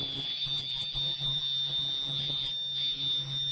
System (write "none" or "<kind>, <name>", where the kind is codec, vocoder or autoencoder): none